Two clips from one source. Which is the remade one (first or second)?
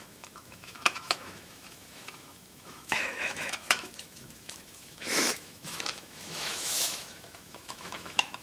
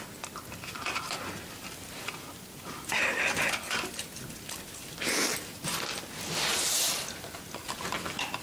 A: first